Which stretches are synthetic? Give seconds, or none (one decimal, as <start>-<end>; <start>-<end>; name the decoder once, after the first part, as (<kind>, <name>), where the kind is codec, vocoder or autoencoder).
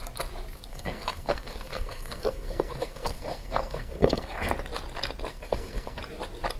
0.7-4.5 (codec, SNAC); 5.3-6.0